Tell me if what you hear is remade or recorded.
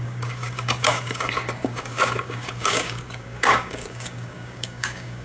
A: remade